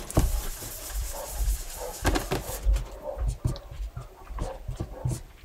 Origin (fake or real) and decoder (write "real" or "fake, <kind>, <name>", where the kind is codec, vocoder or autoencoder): fake, vocoder, BigVGAN v2